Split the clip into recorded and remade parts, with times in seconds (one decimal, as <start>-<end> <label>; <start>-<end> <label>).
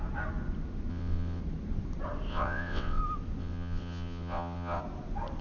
0.0-0.9 recorded; 0.9-1.4 remade; 1.4-2.3 recorded; 2.3-3.0 remade; 3.0-3.4 recorded; 3.4-4.8 remade; 4.8-5.4 recorded